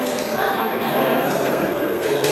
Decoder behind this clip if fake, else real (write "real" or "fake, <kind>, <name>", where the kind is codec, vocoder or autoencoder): fake, codec, SNAC